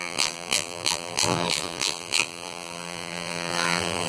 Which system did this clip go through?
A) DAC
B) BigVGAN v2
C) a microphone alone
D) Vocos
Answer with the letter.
B